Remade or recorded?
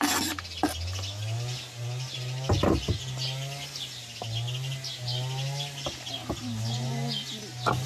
recorded